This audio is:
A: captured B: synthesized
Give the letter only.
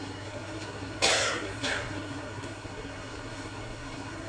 B